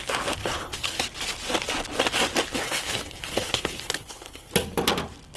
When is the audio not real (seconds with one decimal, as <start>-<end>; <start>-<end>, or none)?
0.4-1.0; 2.5-4.5